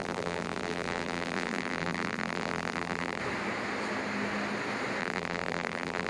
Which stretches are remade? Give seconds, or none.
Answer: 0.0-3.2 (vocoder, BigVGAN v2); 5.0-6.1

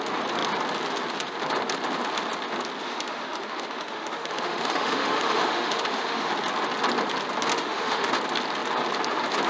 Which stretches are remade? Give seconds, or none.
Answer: 2.8-6.3 (autoencoder, DAC-VAE); 7.5-8.1